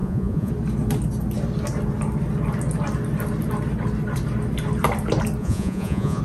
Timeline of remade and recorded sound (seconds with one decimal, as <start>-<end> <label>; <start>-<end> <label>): 0.0-0.5 remade; 0.5-5.4 recorded; 5.4-6.2 remade